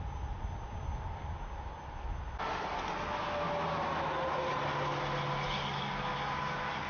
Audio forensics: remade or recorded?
recorded